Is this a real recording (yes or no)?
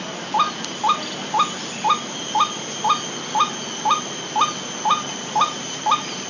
yes